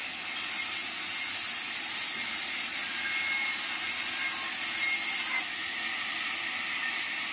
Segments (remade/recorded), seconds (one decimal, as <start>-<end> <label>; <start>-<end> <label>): 0.0-7.3 recorded